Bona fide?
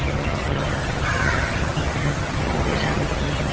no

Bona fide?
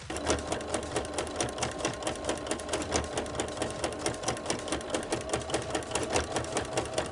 yes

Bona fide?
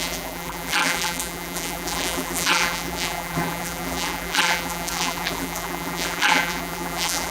no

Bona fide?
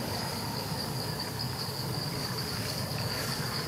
no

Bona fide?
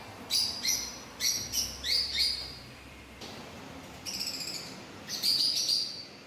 no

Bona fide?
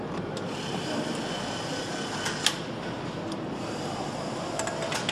yes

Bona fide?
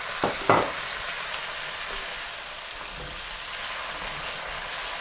yes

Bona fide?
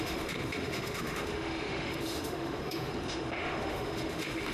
no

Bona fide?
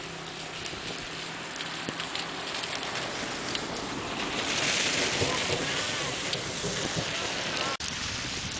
yes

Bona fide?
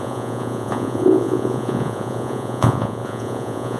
no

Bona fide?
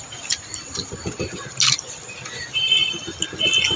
yes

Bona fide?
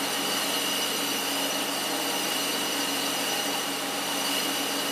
yes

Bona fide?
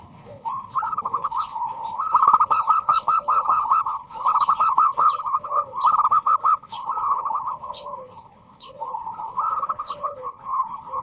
no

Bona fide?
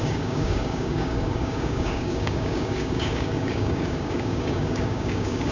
no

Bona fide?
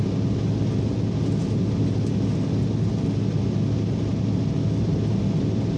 yes